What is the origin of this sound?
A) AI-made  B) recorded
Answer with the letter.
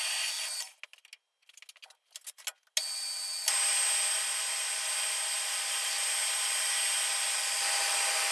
B